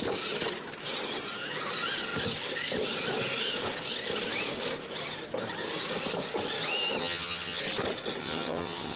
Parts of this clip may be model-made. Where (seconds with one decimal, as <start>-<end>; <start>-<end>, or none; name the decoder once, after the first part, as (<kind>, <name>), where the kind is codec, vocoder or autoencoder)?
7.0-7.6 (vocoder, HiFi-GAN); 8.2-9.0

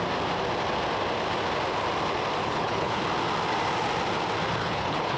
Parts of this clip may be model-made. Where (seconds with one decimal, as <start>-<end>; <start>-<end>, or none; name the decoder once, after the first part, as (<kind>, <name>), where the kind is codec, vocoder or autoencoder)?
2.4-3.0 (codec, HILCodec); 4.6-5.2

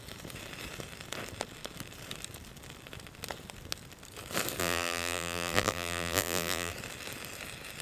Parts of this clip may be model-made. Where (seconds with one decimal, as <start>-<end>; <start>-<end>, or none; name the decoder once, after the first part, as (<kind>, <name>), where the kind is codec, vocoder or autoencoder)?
4.6-6.7 (vocoder, BigVGAN v2)

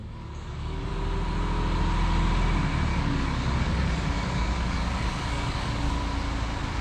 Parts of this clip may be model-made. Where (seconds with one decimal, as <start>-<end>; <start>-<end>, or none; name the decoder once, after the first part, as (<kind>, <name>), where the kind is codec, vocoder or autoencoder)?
0.0-0.9 (codec, DAC); 2.9-5.9

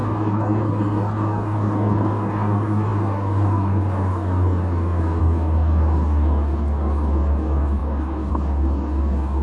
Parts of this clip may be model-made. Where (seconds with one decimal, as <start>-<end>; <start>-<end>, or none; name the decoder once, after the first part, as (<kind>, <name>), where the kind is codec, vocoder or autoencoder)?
0.0-9.4 (codec, DAC)